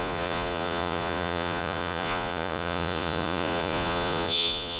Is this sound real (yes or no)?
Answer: no